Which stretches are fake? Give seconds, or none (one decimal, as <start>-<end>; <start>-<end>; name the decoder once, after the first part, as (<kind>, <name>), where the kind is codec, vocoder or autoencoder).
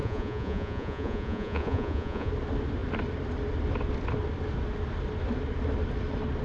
0.0-2.3 (vocoder, Vocos)